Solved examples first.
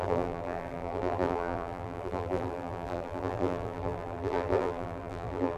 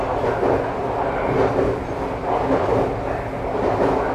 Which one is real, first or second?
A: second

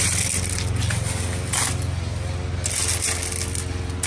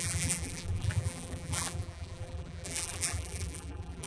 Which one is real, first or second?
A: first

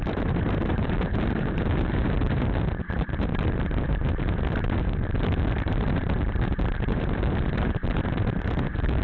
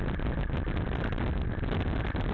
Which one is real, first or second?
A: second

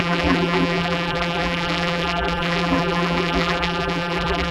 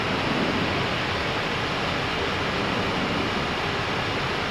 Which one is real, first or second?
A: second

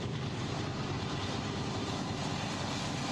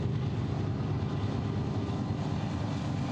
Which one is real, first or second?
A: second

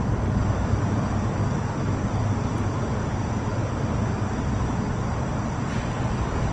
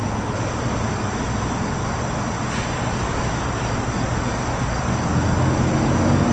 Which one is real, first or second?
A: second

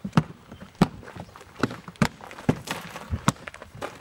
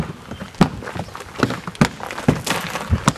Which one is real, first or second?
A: second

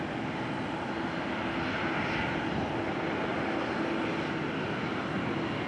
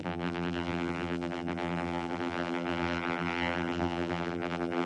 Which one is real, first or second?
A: first